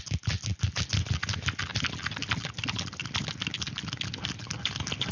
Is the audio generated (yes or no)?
no